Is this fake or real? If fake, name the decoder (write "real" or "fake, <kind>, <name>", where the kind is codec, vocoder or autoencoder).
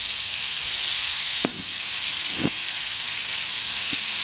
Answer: fake, codec, SNAC